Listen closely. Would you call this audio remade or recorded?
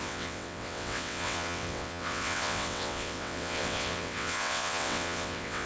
remade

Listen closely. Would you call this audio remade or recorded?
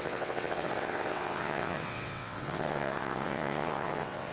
remade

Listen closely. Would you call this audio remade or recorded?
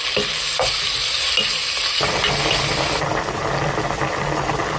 recorded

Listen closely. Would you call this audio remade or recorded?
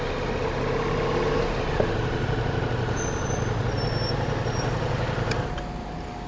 recorded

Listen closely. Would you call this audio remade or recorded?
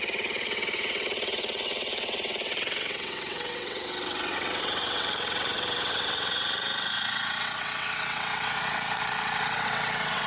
remade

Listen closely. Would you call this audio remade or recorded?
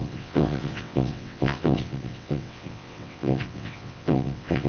remade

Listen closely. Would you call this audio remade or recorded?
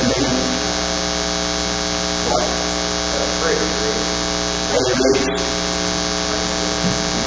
recorded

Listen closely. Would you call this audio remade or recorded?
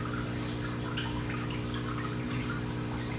recorded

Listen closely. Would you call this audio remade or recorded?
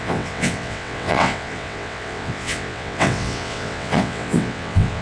remade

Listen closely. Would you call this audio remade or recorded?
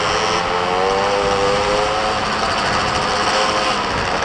recorded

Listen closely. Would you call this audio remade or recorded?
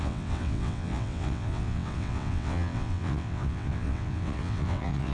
remade